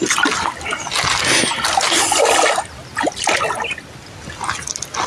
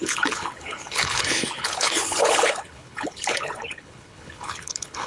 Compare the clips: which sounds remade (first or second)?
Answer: second